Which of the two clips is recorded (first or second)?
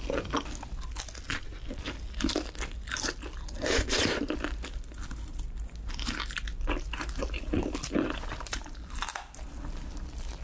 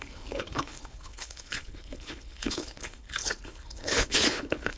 first